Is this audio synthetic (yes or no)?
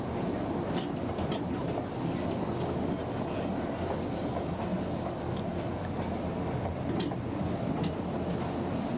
no